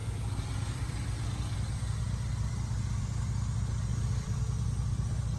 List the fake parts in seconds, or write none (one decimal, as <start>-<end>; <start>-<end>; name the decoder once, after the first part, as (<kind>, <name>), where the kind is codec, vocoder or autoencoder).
0.0-3.0 (vocoder, BigVGAN v2); 3.9-4.4